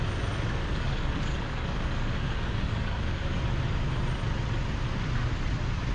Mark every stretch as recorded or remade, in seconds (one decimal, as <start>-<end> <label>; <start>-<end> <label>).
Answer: 0.0-0.6 recorded; 0.6-3.4 remade; 3.4-5.9 recorded